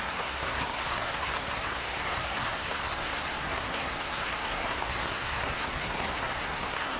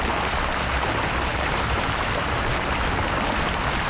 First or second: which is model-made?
first